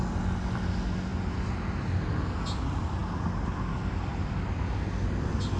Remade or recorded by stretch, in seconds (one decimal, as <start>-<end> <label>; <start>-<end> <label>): 0.0-5.6 recorded